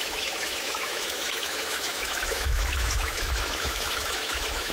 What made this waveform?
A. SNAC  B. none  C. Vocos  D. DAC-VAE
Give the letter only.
D